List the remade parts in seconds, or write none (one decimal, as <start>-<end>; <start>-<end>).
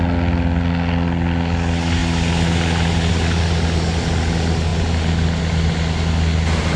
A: none